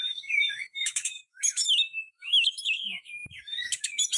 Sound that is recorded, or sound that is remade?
remade